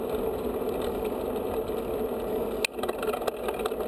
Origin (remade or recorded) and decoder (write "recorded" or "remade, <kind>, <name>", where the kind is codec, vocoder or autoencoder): recorded